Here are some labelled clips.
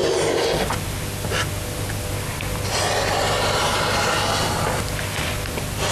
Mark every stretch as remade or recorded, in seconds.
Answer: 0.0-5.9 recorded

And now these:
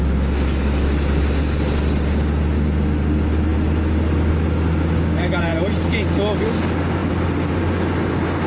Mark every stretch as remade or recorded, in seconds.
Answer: 0.0-8.5 recorded

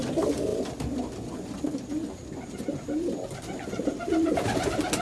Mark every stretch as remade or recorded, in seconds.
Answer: 0.0-5.0 recorded

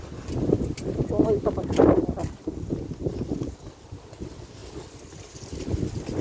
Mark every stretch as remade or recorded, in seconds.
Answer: 0.0-6.2 recorded

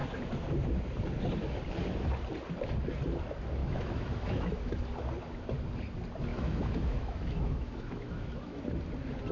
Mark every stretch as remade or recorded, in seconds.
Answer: 0.0-3.6 recorded; 3.6-4.7 remade; 4.7-6.3 recorded; 6.3-8.6 remade; 8.6-9.3 recorded

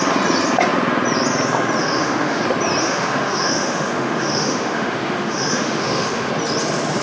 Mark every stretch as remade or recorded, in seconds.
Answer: 0.0-1.8 recorded; 1.8-2.4 remade; 2.4-2.8 recorded; 2.8-6.3 remade; 6.3-7.0 recorded

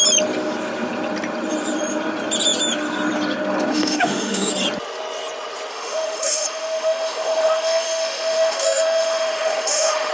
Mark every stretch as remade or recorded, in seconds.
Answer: 0.0-3.7 recorded; 3.7-4.5 remade; 4.5-5.7 recorded; 5.7-10.1 remade